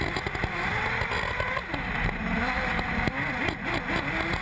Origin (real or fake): real